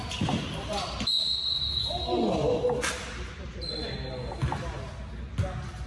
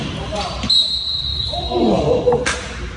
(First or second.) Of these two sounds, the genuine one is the first